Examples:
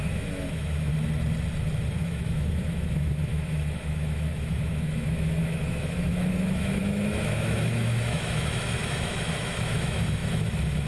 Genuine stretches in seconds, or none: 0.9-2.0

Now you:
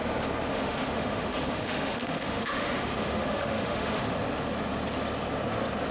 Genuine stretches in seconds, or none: 0.0-0.5; 4.0-5.9